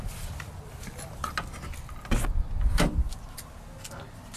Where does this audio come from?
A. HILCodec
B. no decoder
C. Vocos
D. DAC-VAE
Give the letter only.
B